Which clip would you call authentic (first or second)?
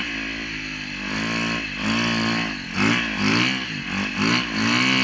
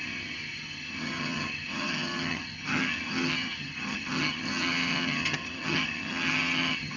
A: first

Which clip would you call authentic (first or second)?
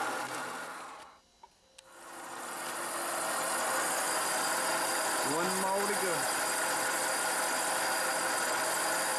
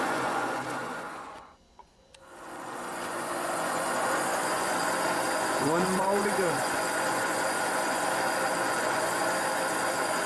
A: first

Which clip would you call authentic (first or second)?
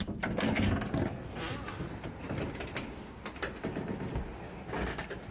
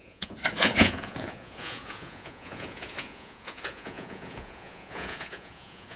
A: first